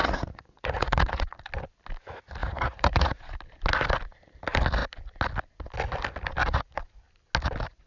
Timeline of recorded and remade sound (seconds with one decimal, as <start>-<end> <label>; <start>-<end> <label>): 0.0-1.5 remade; 1.5-2.4 recorded; 2.4-3.4 remade; 3.4-6.4 recorded; 6.4-7.0 remade; 7.0-7.9 recorded

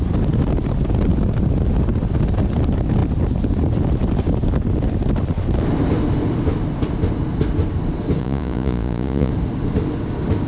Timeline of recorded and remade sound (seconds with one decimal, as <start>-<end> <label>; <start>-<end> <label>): 0.0-8.2 recorded; 8.2-9.3 remade; 9.3-10.5 recorded

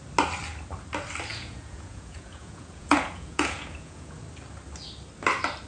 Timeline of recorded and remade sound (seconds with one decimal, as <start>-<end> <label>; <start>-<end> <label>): 0.0-1.3 recorded; 1.3-4.2 remade; 4.2-5.7 recorded

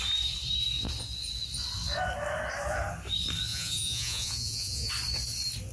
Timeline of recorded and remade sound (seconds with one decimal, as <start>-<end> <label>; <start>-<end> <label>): 0.0-3.5 recorded; 3.5-4.9 remade; 4.9-5.7 recorded